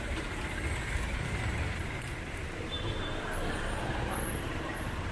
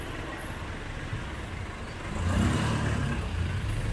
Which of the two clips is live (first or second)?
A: second